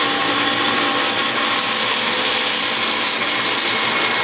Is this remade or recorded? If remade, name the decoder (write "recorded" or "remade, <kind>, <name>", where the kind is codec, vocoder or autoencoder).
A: recorded